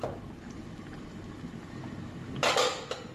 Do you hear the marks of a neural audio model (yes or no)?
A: no